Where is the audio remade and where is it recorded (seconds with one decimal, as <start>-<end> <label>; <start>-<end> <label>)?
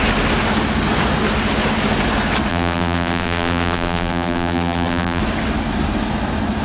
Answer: 0.0-2.5 recorded; 2.5-5.2 remade; 5.2-6.6 recorded